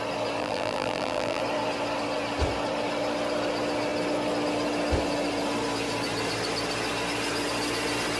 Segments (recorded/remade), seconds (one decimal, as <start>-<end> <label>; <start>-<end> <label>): 0.0-0.4 recorded; 0.4-1.4 remade; 1.4-8.2 recorded